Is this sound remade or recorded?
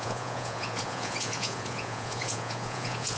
remade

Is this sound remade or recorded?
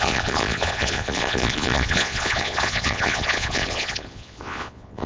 remade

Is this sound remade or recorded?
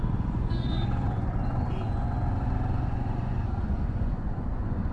remade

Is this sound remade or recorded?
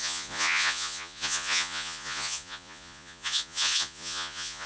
remade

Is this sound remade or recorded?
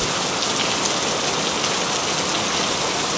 recorded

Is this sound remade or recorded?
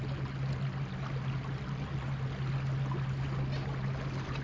recorded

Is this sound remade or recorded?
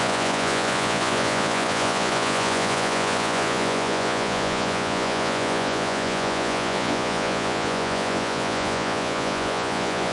remade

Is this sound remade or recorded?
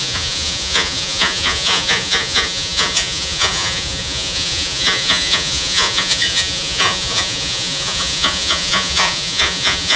remade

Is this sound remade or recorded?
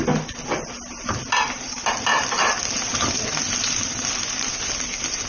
recorded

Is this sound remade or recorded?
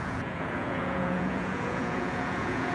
remade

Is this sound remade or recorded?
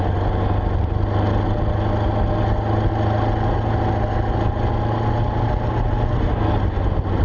recorded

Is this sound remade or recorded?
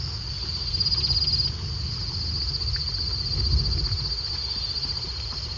recorded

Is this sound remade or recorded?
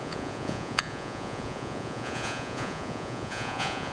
remade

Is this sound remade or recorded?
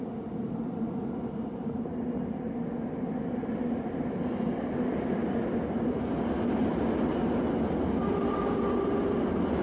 recorded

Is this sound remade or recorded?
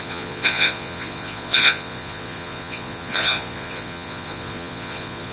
remade